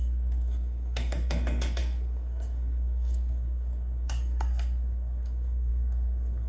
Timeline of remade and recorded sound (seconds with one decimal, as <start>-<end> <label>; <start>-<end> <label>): 0.0-6.5 remade